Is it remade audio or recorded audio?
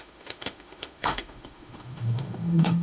remade